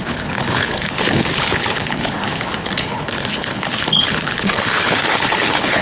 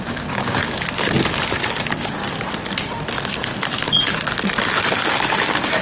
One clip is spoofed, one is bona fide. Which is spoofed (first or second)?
first